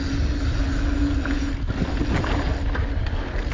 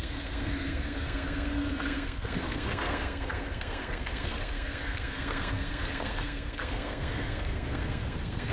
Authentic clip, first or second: first